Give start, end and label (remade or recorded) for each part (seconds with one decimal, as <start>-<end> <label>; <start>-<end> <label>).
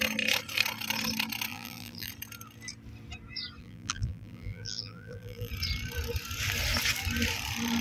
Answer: 0.0-1.5 recorded; 1.5-2.1 remade; 2.1-3.6 recorded; 3.6-5.5 remade; 5.5-7.8 recorded